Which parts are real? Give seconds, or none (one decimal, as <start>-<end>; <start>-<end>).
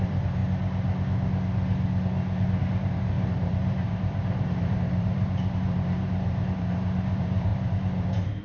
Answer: 0.4-2.6